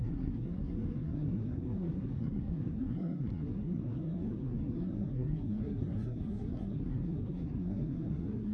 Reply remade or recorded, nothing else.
remade